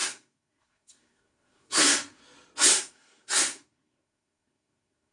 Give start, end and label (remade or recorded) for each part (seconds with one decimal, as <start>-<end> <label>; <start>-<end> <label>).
0.0-2.2 remade; 2.2-2.7 recorded; 2.7-5.1 remade